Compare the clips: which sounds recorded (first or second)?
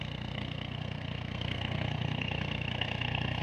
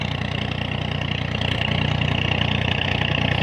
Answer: second